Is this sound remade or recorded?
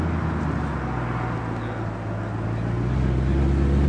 recorded